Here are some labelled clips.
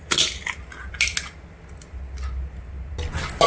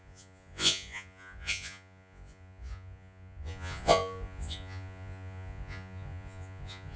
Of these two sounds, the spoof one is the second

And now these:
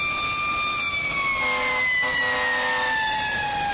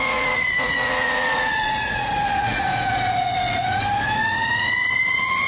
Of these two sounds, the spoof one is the second